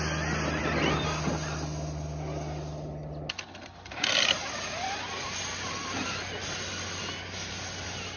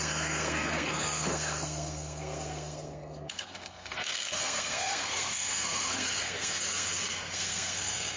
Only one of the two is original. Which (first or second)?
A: first